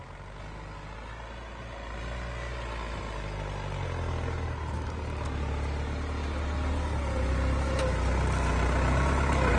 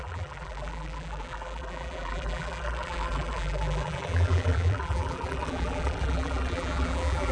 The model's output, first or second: second